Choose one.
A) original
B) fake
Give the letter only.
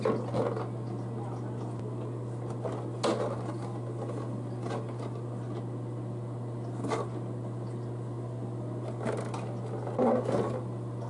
A